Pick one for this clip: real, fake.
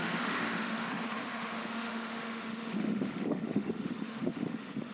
fake